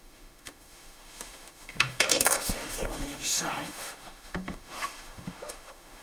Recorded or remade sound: remade